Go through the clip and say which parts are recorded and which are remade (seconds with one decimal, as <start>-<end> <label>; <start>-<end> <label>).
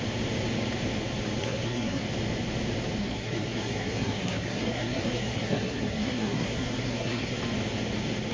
0.0-1.4 recorded; 1.4-2.0 remade; 2.0-3.0 recorded; 3.0-7.4 remade; 7.4-8.3 recorded